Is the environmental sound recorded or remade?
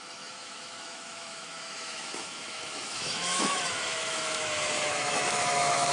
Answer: remade